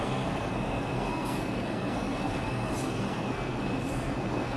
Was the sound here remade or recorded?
remade